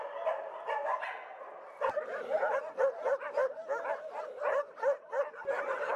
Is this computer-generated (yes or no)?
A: no